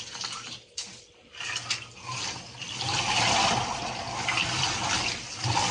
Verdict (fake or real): real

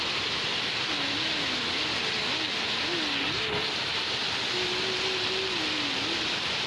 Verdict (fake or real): real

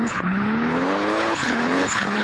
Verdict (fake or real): fake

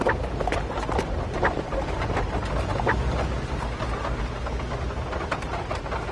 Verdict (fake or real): real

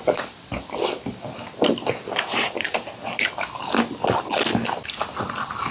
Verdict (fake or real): real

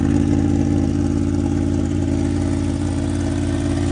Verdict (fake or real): real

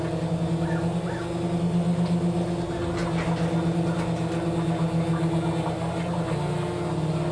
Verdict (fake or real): real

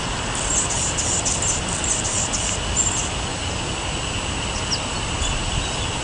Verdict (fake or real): real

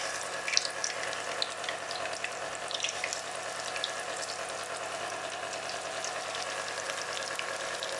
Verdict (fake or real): real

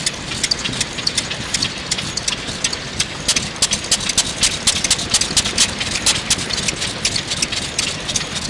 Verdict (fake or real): real